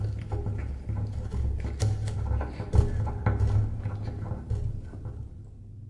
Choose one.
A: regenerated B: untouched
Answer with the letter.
B